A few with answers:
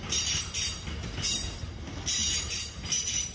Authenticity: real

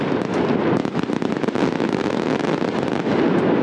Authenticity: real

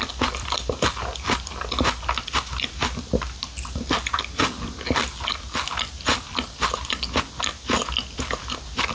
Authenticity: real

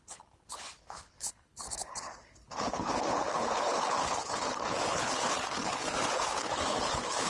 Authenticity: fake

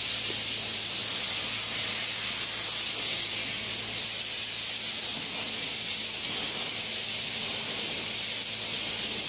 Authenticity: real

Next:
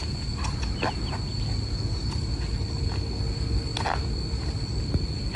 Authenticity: real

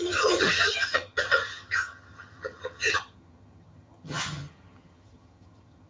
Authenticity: fake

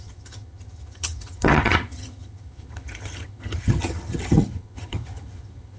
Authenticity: fake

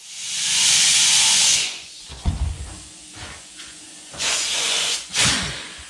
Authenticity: fake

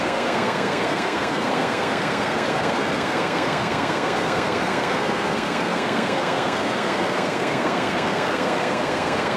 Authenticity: fake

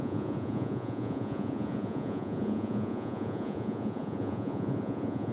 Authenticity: fake